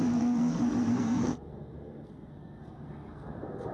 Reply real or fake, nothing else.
fake